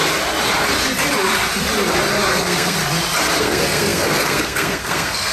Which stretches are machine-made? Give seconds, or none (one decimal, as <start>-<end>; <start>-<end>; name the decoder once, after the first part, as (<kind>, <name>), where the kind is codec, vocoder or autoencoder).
2.3-2.8 (codec, SNAC); 3.4-5.3